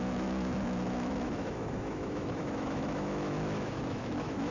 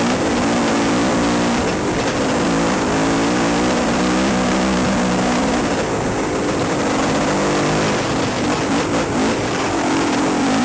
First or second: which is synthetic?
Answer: first